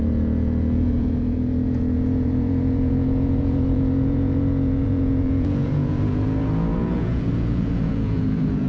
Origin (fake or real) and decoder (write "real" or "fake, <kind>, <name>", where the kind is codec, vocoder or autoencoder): fake, vocoder, Vocos